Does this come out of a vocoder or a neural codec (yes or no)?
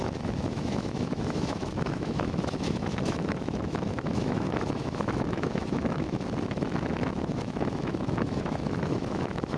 yes